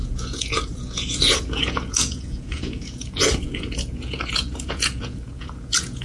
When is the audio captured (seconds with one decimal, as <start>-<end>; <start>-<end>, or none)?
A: none